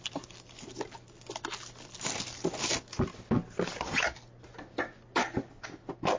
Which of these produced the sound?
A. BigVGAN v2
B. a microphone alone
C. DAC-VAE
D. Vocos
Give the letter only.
B